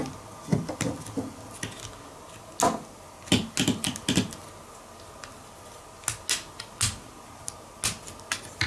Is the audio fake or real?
real